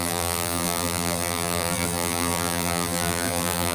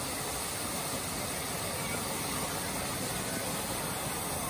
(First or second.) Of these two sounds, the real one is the second